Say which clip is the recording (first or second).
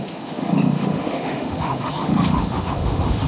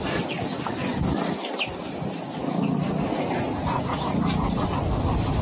second